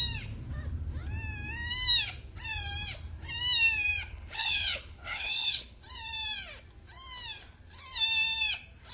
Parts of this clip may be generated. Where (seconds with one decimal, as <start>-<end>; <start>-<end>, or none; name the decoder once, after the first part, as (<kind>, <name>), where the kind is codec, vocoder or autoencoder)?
4.1-5.8 (codec, HILCodec)